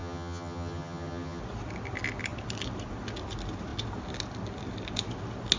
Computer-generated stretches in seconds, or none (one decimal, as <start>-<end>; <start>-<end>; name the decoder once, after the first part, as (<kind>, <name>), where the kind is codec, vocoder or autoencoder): 0.0-1.4 (vocoder, HiFi-GAN)